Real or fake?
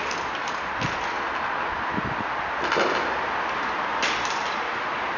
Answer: real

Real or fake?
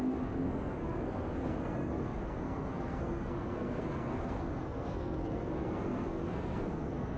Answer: fake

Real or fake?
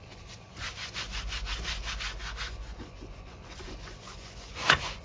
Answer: fake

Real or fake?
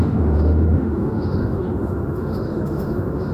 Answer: fake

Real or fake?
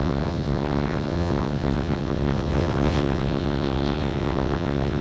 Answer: fake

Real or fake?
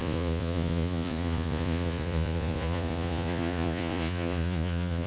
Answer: fake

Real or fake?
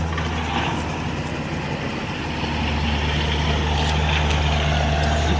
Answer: real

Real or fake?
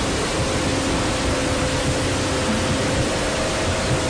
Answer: real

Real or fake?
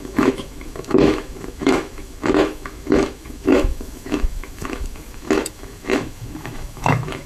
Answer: fake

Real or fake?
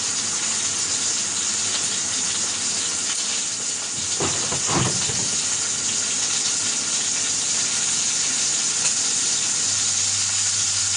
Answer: real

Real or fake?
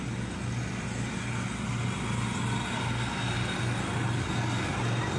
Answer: real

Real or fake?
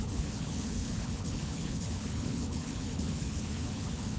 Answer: fake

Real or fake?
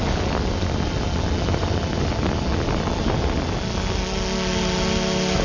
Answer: real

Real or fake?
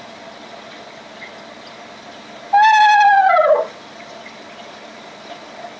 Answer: real